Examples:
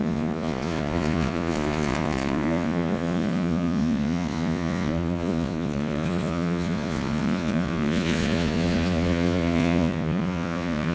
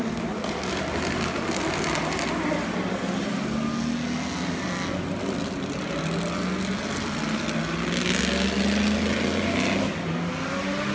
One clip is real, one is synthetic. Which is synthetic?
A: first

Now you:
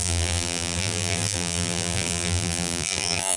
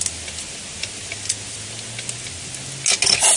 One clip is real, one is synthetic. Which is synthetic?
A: first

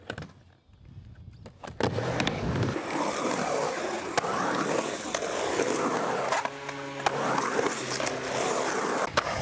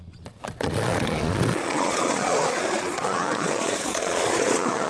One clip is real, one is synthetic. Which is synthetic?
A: second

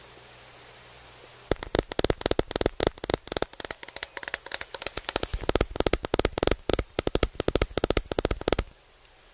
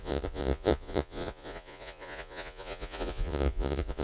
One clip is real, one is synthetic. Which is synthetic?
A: second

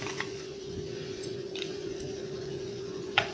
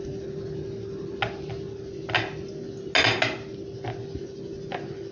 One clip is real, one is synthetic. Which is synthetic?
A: first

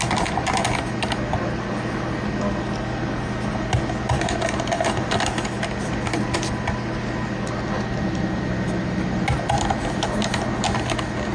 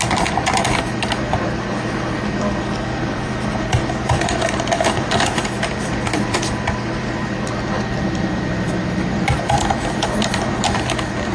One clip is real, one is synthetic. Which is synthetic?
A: second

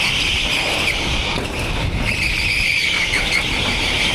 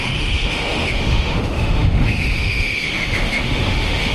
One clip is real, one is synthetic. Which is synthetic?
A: second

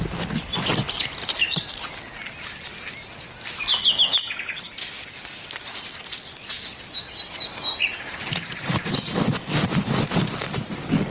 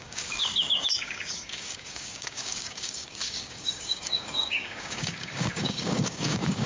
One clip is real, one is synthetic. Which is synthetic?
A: second